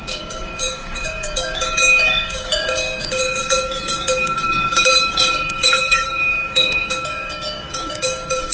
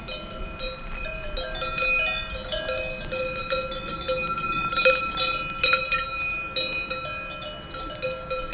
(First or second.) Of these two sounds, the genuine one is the second